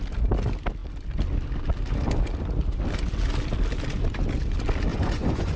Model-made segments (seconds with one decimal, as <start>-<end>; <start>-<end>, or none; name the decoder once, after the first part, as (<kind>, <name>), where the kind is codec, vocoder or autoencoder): 4.9-5.6 (vocoder, Vocos)